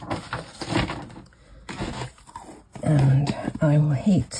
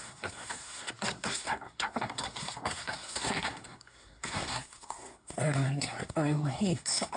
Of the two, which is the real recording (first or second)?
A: first